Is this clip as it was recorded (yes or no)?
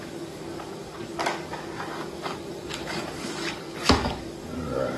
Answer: no